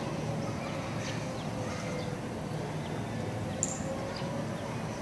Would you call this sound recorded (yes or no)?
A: yes